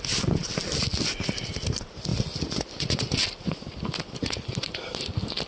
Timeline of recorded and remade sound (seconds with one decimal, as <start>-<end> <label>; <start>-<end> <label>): 0.0-5.5 recorded